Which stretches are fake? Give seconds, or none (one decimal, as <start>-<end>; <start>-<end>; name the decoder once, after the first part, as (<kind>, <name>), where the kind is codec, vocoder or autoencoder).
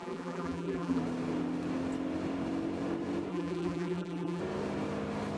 0.0-1.0 (vocoder, BigVGAN v2); 3.3-4.4